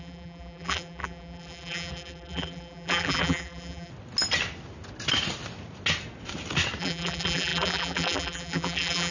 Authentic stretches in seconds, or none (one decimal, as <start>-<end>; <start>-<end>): 3.9-6.8